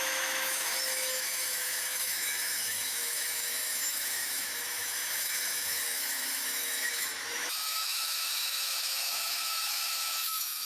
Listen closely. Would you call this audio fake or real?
fake